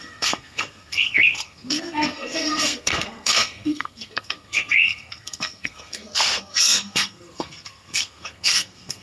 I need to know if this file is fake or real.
fake